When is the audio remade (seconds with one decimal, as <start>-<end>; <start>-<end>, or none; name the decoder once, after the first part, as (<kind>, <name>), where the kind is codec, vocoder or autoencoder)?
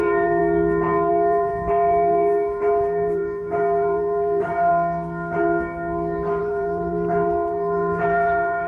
0.0-0.4 (vocoder, BigVGAN v2); 1.1-4.7; 6.4-8.7